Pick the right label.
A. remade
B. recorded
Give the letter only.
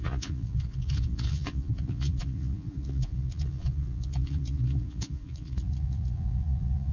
A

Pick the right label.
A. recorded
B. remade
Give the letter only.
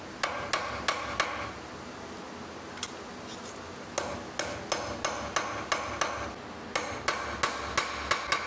A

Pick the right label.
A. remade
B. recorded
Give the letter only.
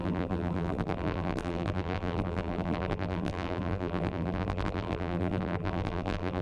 A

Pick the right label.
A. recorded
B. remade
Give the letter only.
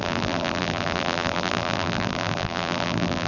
B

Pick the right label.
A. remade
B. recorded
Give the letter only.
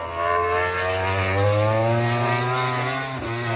B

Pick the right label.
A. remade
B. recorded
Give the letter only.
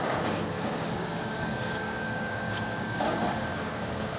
A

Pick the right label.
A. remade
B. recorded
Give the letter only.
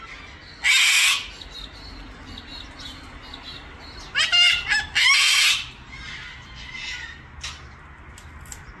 B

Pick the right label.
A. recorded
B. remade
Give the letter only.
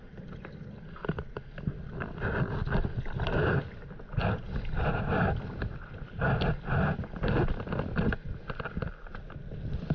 A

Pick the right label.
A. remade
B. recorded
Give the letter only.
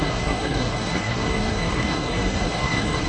A